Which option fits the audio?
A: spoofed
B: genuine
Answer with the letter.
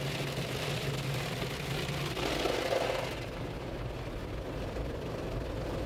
B